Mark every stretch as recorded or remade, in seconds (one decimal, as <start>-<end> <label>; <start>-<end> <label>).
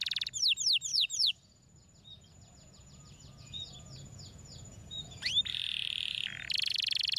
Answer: 0.0-0.9 recorded; 0.9-5.2 remade; 5.2-7.2 recorded